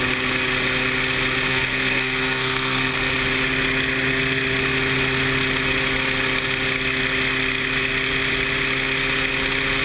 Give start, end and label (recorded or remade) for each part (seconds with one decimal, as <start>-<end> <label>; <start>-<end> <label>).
0.0-1.5 recorded; 1.5-2.9 remade; 2.9-9.8 recorded